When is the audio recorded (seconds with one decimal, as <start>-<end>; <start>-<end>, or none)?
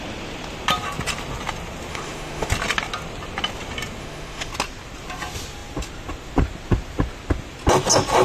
0.0-1.9; 2.5-4.0; 4.5-8.2